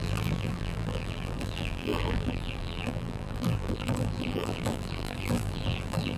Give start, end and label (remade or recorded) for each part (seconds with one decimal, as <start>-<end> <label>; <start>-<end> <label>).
0.0-6.2 remade